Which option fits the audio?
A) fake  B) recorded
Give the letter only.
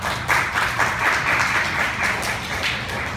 B